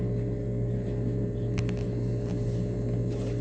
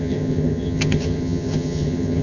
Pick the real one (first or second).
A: first